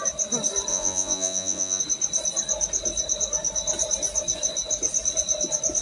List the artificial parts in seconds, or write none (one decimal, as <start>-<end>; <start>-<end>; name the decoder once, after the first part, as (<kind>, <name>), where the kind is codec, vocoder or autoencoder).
0.7-1.8 (vocoder, Vocos)